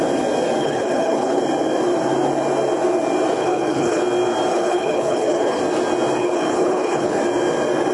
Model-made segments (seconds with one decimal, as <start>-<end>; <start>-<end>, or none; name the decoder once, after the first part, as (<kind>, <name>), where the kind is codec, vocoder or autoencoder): 0.6-1.4 (codec, HILCodec); 3.4-4.0; 4.5-5.6; 6.2-7.2